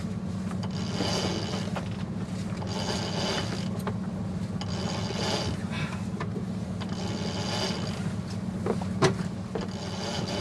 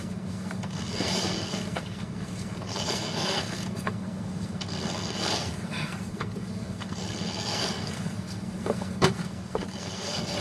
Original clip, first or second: first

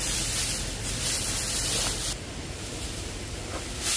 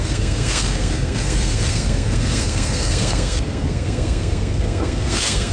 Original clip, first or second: first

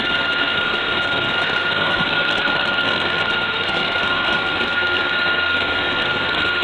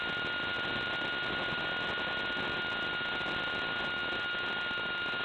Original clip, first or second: second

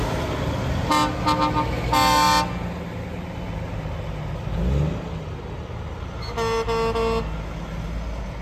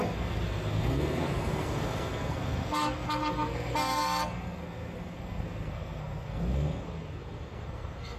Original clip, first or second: first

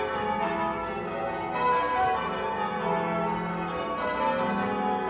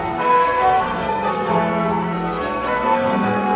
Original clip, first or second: first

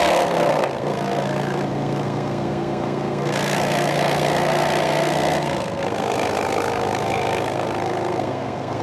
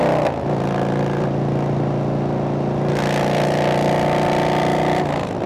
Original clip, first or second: second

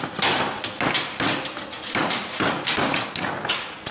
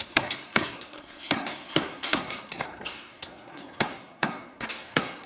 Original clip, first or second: first